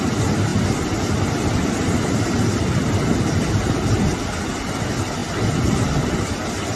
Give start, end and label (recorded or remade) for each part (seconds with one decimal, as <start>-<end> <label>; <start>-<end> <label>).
0.0-6.8 recorded